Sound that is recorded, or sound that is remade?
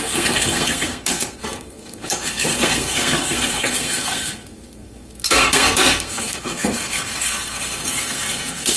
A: remade